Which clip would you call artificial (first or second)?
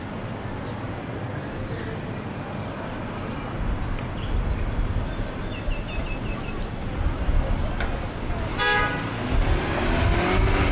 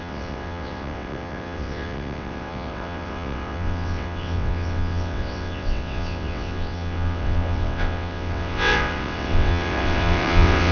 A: second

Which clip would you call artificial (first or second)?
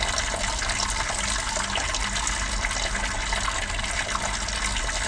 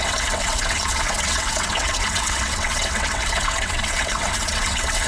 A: second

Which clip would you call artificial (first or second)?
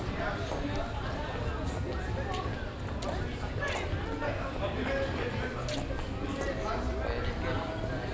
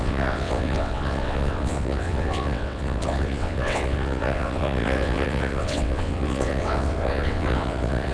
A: second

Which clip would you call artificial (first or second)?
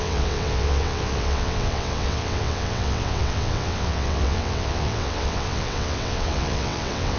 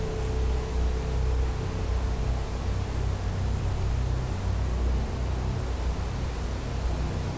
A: first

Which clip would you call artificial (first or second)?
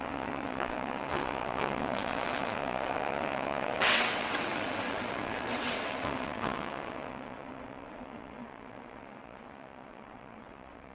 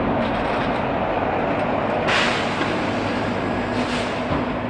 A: first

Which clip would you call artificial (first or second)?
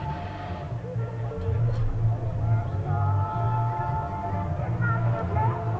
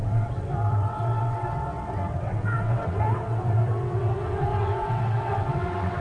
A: second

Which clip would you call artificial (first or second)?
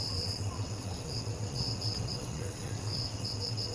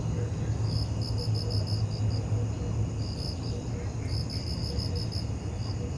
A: first